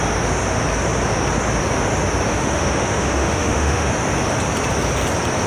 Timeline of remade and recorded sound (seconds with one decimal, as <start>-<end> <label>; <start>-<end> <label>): 0.0-2.3 recorded; 2.3-3.9 remade; 3.9-5.5 recorded